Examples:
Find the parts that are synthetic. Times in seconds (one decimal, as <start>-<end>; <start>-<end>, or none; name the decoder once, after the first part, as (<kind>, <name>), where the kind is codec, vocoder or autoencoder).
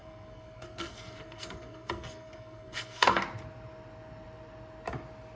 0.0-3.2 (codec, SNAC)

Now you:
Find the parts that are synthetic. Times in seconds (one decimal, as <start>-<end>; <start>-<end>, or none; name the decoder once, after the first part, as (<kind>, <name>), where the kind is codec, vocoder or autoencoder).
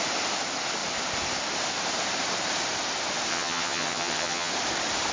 3.3-4.5 (vocoder, HiFi-GAN)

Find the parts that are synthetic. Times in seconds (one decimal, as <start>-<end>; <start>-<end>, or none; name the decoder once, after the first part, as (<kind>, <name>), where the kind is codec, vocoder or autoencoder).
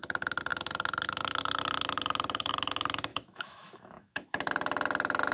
3.1-4.4 (autoencoder, DAC-VAE)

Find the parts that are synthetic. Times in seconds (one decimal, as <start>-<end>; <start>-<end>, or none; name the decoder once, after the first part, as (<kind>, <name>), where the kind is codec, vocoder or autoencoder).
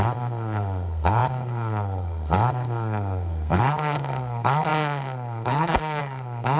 0.0-6.6 (codec, SNAC)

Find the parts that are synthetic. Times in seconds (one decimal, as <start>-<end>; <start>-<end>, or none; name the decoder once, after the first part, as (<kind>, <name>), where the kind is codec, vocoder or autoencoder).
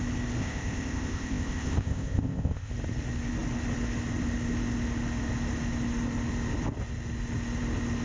0.4-2.7 (codec, ZipCodec)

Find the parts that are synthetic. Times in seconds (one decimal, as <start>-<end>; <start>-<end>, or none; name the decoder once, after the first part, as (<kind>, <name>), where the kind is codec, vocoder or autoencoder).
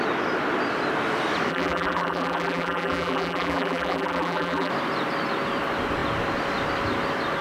1.5-4.7 (vocoder, BigVGAN v2)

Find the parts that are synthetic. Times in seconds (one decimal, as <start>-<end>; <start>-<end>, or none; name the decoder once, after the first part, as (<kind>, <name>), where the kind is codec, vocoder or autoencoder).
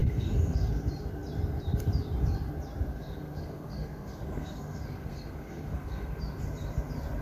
0.0-0.7 (codec, SNAC); 2.9-6.2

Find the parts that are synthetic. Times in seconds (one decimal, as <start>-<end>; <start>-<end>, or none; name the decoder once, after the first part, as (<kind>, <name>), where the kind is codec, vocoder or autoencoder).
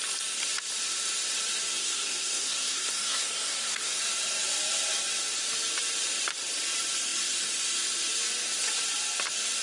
1.8-4.0 (codec, SNAC)